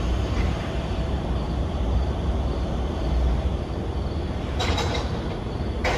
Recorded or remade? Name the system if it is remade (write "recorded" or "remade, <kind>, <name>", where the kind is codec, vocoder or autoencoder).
remade, vocoder, BigVGAN v2